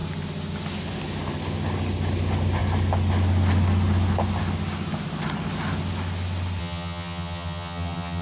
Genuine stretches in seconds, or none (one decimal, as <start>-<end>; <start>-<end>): 0.0-6.6